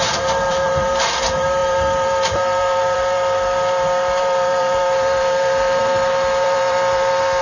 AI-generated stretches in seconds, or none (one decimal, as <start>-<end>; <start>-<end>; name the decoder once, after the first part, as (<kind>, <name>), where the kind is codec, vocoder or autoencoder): 0.0-7.4 (vocoder, BigVGAN v2)